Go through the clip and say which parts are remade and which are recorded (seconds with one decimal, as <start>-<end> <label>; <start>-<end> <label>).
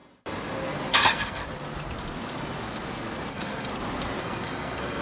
0.0-0.9 recorded; 0.9-1.4 remade; 1.4-3.3 recorded; 3.3-3.7 remade; 3.7-4.2 recorded; 4.2-5.0 remade